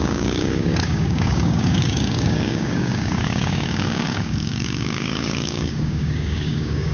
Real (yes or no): no